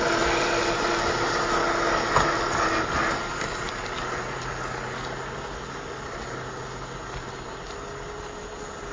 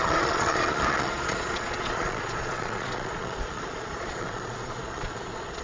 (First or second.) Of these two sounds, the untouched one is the first